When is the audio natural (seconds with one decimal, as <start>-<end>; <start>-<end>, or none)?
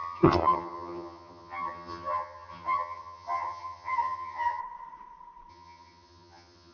4.6-5.5